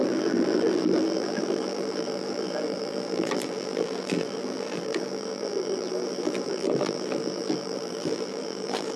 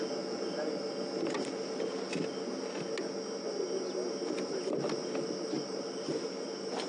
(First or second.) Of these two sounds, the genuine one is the second